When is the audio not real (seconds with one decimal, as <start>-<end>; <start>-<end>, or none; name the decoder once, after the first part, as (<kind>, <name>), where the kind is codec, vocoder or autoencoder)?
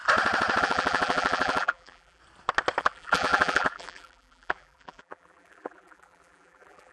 0.6-2.2 (vocoder, BigVGAN v2); 2.8-6.9